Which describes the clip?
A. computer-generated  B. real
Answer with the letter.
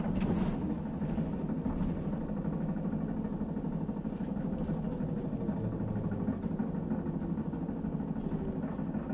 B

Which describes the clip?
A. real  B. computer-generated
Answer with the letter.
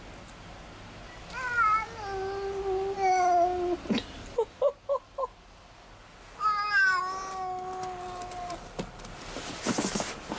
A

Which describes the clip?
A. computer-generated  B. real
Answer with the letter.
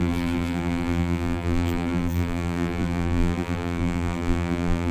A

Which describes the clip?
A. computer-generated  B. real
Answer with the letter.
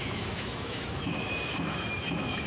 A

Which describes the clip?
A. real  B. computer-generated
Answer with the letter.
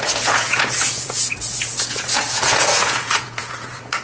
B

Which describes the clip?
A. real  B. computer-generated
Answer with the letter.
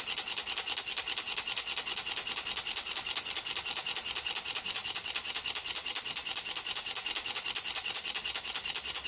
A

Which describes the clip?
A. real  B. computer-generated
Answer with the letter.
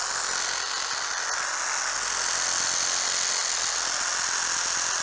A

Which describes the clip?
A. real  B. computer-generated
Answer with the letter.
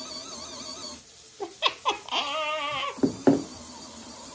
A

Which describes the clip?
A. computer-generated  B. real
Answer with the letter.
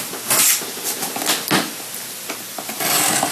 B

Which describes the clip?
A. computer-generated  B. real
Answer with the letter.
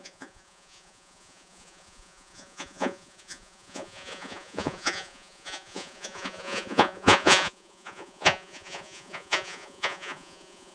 A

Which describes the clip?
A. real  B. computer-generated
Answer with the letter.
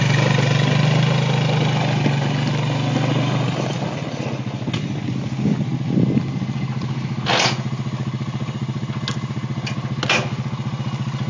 A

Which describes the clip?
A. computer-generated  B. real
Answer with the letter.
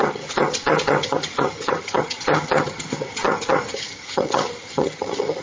A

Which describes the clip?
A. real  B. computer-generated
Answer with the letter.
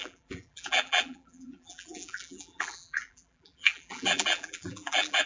B